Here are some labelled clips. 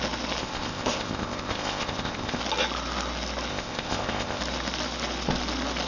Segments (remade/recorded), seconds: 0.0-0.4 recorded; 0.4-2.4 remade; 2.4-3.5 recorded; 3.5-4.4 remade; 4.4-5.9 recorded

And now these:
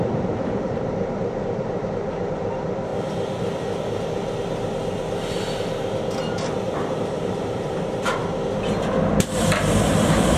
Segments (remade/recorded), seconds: 0.0-2.9 remade; 2.9-7.0 recorded; 7.0-8.2 remade; 8.2-9.1 recorded; 9.1-10.4 remade

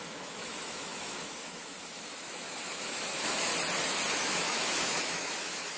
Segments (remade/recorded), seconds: 0.0-3.5 remade; 3.5-4.1 recorded; 4.1-5.8 remade